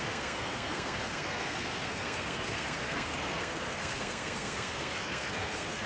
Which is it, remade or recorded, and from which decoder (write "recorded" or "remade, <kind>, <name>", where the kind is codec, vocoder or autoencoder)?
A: remade, codec, SNAC